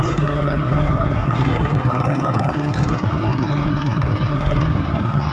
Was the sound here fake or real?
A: fake